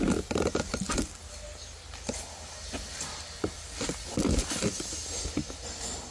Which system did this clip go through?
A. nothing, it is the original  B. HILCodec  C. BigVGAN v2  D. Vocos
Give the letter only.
A